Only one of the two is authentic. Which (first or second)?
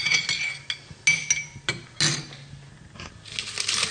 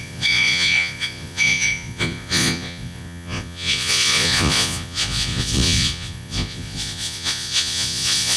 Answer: first